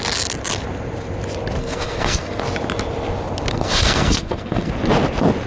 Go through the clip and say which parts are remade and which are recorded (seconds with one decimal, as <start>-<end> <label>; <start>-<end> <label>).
0.0-1.6 recorded; 1.6-2.4 remade; 2.4-3.5 recorded; 3.5-4.7 remade; 4.7-5.5 recorded